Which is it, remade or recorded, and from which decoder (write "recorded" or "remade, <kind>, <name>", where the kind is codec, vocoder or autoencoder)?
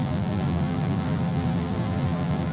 remade, vocoder, BigVGAN v2